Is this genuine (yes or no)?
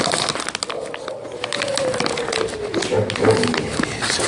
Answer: yes